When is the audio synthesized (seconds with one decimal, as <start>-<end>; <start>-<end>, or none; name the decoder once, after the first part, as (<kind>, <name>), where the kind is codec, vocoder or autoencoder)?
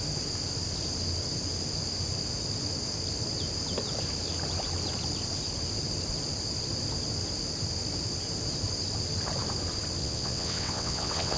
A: 10.0-11.4 (vocoder, WaveNeXt)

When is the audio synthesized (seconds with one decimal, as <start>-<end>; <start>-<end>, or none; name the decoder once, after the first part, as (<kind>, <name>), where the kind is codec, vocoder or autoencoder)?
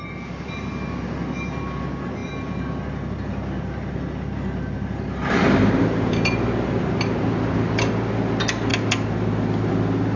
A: none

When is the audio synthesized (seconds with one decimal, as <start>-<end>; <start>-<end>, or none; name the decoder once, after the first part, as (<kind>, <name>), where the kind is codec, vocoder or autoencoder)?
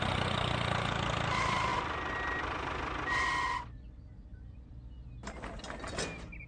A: none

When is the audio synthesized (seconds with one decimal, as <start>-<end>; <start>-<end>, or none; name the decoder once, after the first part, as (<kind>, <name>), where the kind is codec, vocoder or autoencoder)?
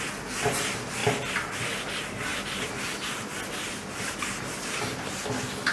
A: none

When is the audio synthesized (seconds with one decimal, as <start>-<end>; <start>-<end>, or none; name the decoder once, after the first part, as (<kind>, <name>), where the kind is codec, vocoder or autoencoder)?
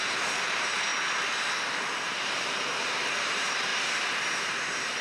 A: 0.0-0.9 (vocoder, BigVGAN v2); 1.6-3.7; 4.4-5.0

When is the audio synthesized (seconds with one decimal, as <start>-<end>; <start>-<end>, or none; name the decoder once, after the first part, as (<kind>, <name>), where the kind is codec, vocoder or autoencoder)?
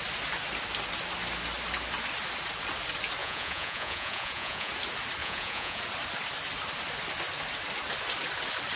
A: 3.2-4.7 (vocoder, Vocos); 5.2-5.8